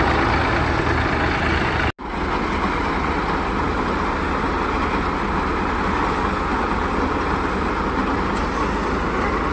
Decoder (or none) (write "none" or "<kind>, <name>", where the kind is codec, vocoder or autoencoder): none